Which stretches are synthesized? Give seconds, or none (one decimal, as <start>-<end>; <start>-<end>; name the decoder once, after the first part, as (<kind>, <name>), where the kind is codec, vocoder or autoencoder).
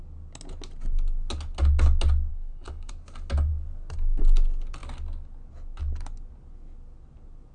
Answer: 2.3-2.9 (codec, HILCodec)